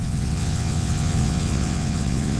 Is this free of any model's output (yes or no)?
no